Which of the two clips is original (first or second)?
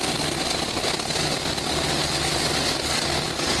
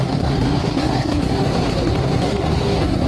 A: first